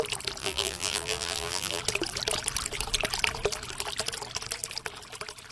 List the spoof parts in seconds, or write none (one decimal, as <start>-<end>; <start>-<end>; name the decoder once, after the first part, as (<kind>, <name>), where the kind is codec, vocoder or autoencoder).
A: 0.4-1.8 (vocoder, BigVGAN v2)